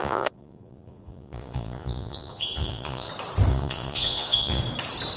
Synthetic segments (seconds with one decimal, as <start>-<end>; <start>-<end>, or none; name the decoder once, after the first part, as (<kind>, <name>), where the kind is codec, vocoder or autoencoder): 0.0-3.1 (vocoder, Vocos); 3.5-4.6